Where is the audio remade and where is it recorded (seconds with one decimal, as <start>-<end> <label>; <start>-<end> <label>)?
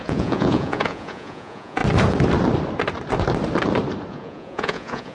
0.0-1.8 remade; 1.8-4.1 recorded; 4.1-5.1 remade